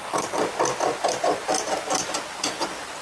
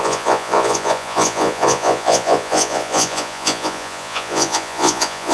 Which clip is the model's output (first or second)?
second